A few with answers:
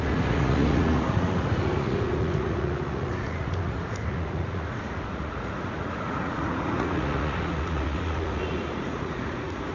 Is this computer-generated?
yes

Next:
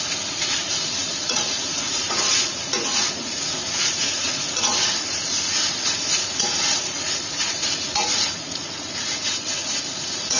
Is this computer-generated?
yes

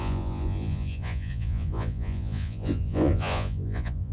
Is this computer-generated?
yes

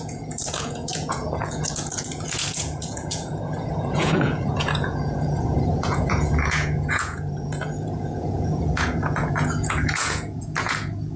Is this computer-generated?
yes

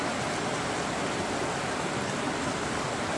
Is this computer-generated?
no